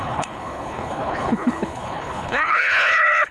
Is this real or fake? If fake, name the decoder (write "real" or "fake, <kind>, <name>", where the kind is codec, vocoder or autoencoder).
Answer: fake, codec, HILCodec